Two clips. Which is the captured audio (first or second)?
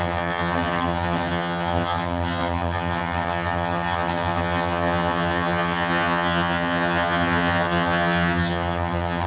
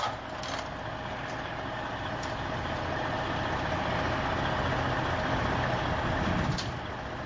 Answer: second